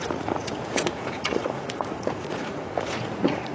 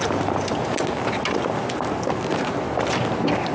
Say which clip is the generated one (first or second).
first